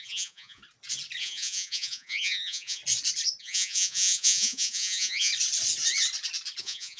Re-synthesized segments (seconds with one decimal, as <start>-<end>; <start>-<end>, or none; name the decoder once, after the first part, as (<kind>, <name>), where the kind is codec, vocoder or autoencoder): 0.0-0.6 (vocoder, Vocos); 1.2-2.8; 3.4-5.3; 6.6-7.0